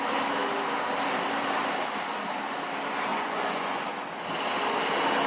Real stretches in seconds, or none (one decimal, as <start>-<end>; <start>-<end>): 0.0-3.1; 3.8-5.3